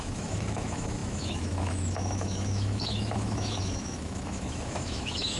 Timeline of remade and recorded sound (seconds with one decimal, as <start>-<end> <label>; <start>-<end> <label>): 0.0-5.4 remade